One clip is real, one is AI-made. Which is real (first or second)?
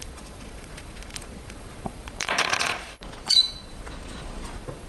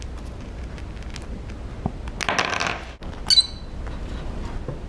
second